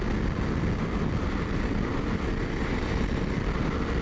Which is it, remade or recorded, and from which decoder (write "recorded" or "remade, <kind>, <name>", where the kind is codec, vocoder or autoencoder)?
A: recorded